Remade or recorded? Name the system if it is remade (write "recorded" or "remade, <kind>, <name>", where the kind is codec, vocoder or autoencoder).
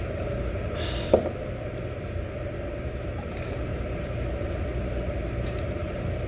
recorded